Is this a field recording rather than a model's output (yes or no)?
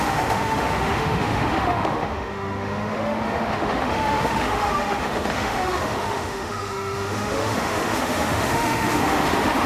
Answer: no